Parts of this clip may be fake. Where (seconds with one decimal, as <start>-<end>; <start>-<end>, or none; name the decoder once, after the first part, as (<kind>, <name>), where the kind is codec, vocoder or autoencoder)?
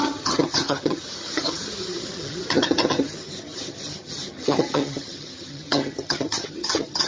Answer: 0.0-7.1 (vocoder, HiFi-GAN)